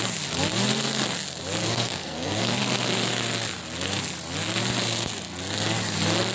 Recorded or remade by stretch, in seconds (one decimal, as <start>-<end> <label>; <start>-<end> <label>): 0.0-1.6 recorded; 1.6-2.6 remade; 2.6-6.3 recorded